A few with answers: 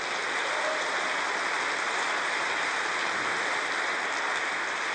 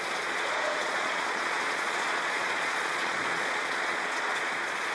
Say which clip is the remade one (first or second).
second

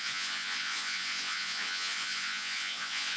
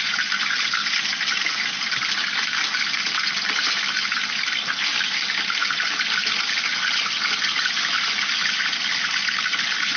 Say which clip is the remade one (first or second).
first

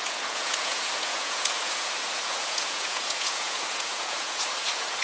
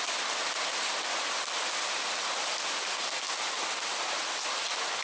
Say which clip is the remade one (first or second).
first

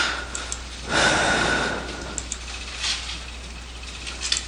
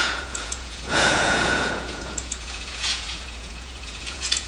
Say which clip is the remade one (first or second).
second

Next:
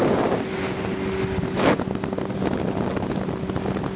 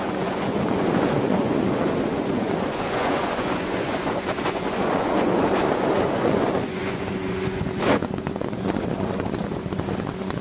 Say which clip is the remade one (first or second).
second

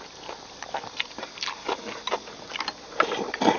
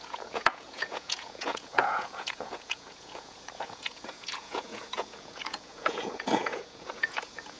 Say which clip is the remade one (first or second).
second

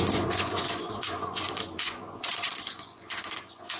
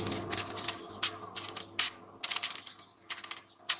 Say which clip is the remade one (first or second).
first